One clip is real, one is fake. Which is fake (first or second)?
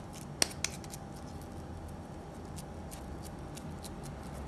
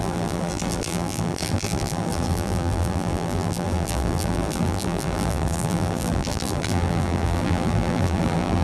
second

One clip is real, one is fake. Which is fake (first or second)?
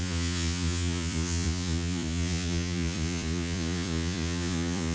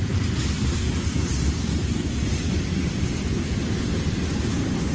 first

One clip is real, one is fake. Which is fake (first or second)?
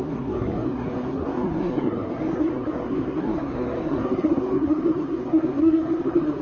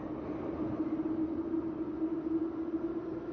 first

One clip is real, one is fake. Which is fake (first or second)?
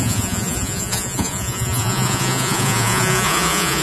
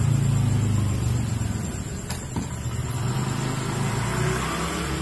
first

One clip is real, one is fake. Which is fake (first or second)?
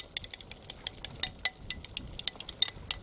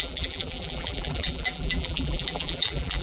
second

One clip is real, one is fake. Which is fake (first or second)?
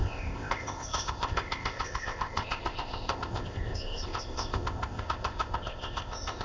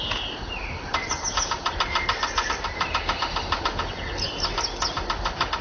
first